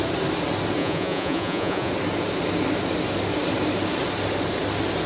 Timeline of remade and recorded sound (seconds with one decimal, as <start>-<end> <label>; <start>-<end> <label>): 0.0-0.8 recorded; 0.8-1.9 remade; 1.9-5.1 recorded